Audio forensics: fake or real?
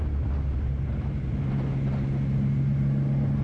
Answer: real